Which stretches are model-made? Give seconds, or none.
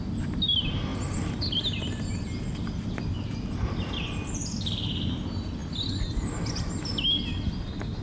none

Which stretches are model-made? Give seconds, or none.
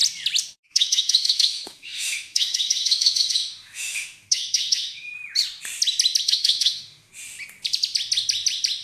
0.7-5.1 (autoencoder, DAC-VAE); 6.2-7.1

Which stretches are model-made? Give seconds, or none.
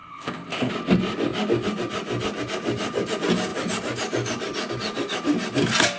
0.0-0.7 (codec, ZipCodec)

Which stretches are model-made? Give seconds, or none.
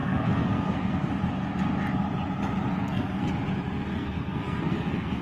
0.0-1.1 (codec, SNAC); 2.7-3.3; 3.9-5.2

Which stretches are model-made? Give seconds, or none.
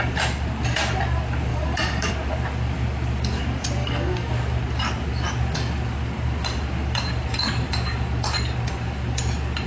1.5-2.1 (codec, DAC); 3.8-4.3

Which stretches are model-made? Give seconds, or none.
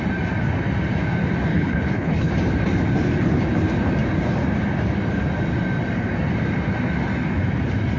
1.5-2.3 (codec, HILCodec)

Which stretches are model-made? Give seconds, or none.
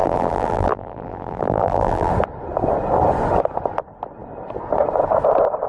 0.0-2.1 (vocoder, BigVGAN v2)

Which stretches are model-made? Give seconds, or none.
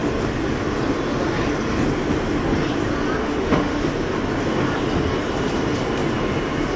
3.2-3.8 (autoencoder, DAC-VAE)